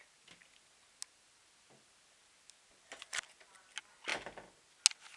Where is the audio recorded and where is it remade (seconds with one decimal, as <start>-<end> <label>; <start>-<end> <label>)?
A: 0.0-5.2 recorded